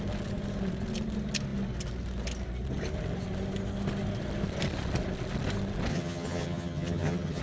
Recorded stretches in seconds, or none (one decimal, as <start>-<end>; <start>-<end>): 0.0-5.9

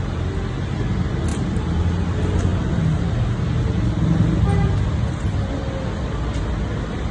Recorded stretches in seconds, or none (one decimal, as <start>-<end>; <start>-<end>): 0.0-1.3; 1.8-7.1

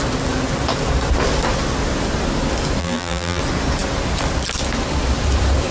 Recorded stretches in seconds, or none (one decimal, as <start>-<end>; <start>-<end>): 0.0-2.8; 3.4-5.7

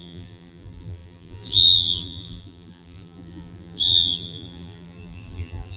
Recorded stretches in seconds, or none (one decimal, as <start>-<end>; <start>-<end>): none

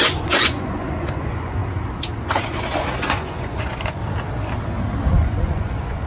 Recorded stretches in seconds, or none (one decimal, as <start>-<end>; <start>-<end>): 1.6-2.2; 4.0-5.1

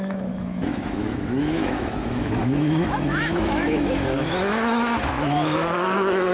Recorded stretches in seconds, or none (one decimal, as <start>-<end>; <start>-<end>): none

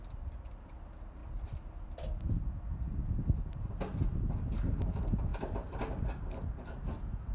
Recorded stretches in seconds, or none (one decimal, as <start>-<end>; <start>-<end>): 0.0-7.3

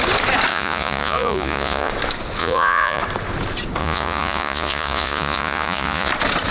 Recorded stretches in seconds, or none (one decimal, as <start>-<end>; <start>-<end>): 0.0-0.5; 1.9-2.4; 3.0-3.8; 6.1-6.5